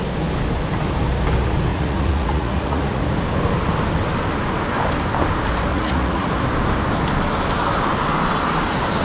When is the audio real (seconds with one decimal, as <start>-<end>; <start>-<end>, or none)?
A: 0.0-1.7; 3.0-5.7; 6.3-9.0